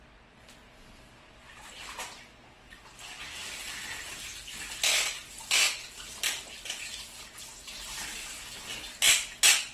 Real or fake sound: real